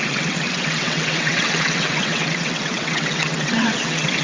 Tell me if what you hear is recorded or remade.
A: remade